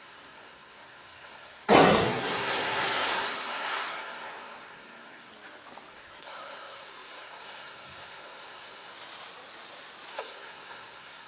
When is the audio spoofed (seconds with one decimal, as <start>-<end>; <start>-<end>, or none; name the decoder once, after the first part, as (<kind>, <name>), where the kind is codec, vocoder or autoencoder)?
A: 0.0-5.3 (codec, SNAC); 5.9-8.9; 10.1-11.3